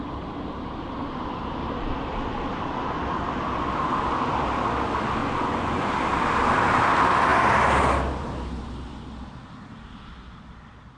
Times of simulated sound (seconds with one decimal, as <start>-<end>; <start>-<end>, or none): 5.2-5.9